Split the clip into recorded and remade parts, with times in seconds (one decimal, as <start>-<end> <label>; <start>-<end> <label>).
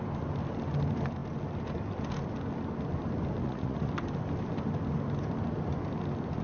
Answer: 0.0-3.4 recorded; 3.4-3.9 remade; 3.9-6.4 recorded